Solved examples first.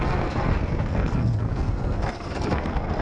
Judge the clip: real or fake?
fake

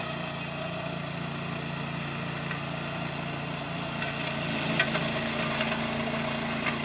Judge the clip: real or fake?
real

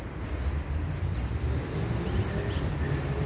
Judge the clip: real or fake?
real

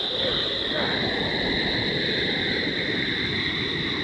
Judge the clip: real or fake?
real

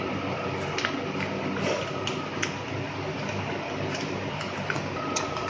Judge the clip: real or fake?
real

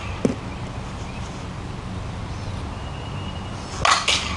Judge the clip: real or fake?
real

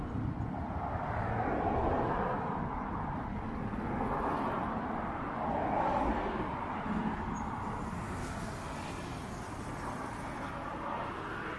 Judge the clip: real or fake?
real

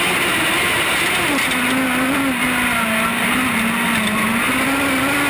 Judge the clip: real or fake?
real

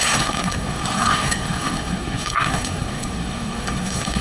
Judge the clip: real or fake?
fake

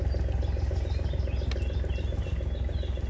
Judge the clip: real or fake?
real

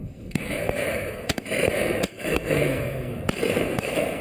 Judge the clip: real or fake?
fake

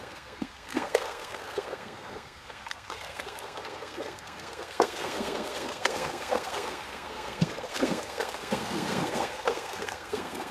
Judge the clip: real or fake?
fake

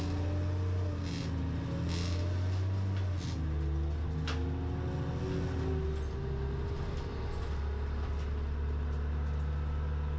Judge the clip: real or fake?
real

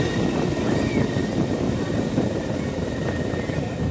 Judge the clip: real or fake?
real